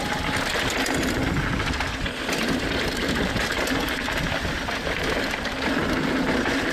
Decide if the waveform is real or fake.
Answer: real